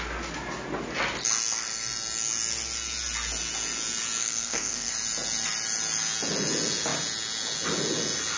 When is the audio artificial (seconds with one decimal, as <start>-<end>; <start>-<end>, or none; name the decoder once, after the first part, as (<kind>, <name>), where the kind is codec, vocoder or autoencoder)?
4.2-4.9 (codec, SNAC)